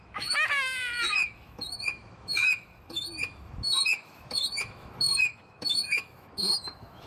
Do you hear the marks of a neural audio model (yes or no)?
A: yes